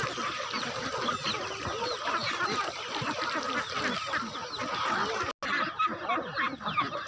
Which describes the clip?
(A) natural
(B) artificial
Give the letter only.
A